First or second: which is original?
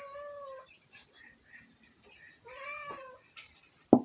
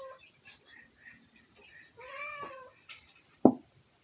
first